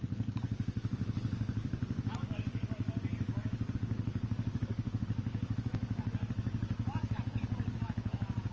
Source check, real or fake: fake